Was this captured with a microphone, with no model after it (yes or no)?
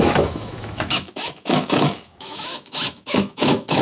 no